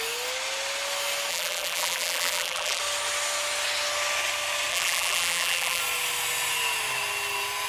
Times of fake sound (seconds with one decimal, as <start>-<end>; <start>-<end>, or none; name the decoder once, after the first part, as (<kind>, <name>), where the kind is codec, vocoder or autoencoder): 1.3-2.8 (vocoder, BigVGAN v2); 4.7-5.8